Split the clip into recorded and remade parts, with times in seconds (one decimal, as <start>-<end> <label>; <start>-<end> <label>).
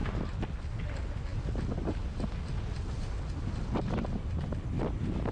0.0-5.3 recorded